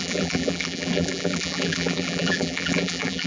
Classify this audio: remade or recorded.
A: remade